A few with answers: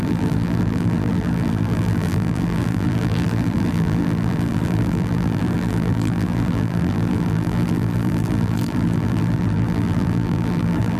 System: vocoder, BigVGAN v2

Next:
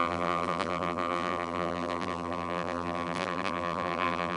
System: vocoder, BigVGAN v2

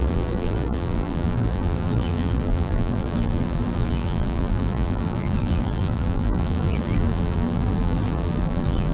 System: vocoder, BigVGAN v2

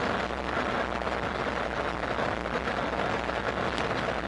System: none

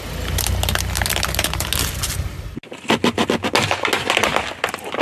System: none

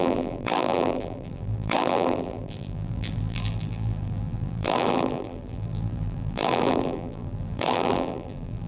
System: vocoder, BigVGAN v2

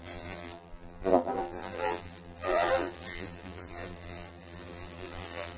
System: vocoder, BigVGAN v2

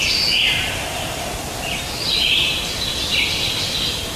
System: none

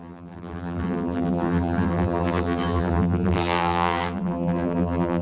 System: vocoder, BigVGAN v2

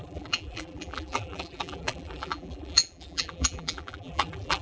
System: vocoder, BigVGAN v2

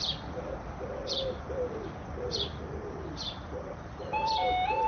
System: vocoder, BigVGAN v2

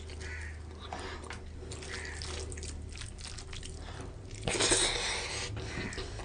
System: none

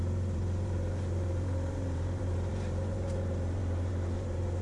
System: vocoder, BigVGAN v2